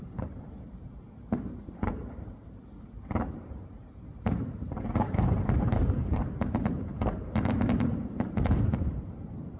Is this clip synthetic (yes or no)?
yes